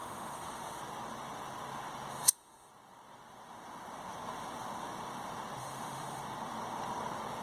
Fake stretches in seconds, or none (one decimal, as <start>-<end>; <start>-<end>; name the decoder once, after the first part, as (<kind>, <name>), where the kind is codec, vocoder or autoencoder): 0.0-0.8 (autoencoder, DAC-VAE); 2.1-2.7; 5.6-6.2

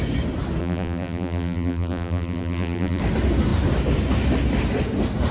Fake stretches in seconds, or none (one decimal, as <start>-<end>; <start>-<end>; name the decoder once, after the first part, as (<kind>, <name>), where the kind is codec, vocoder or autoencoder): 0.6-3.0 (vocoder, BigVGAN v2)

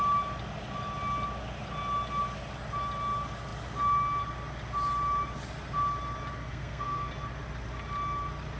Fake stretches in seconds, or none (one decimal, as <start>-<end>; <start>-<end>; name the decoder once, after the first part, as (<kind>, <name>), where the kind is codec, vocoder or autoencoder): 6.4-7.1 (codec, SNAC)